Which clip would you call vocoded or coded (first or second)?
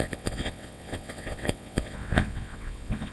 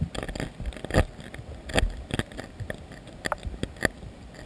first